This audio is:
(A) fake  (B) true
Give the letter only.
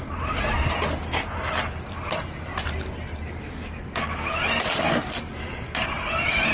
B